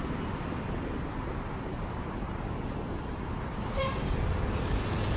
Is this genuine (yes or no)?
no